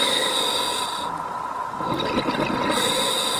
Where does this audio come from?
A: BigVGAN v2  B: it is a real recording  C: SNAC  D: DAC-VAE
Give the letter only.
B